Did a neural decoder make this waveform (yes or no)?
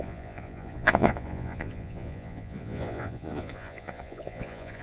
yes